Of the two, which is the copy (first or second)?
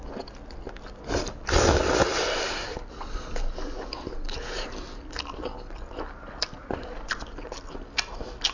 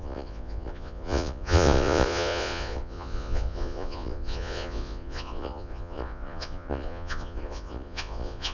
second